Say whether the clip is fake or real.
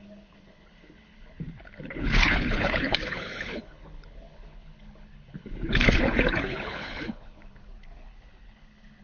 fake